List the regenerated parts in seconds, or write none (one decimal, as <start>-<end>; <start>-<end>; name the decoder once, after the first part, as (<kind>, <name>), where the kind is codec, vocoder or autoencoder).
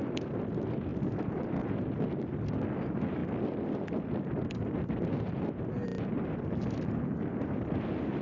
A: none